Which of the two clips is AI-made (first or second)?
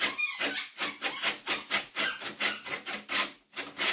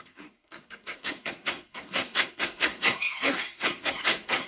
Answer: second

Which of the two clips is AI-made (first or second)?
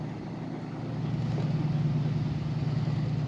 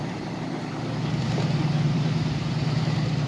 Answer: second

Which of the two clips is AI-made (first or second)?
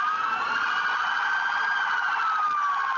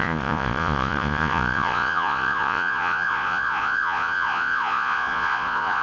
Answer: second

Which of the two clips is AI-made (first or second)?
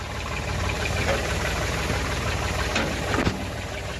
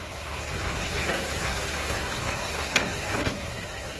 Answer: second